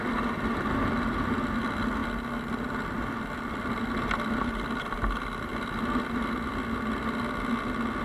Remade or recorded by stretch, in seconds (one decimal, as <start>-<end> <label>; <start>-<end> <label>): 0.0-8.0 recorded